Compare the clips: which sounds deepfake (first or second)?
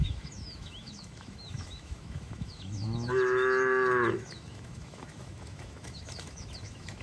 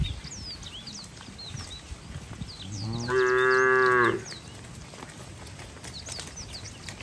first